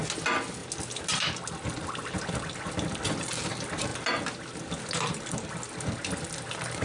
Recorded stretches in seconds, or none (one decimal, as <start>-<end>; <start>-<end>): 0.0-6.8